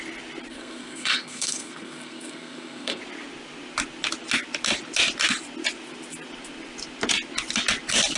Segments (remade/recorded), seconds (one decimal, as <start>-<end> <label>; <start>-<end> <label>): 0.0-0.5 recorded; 0.5-3.0 remade; 3.0-8.2 recorded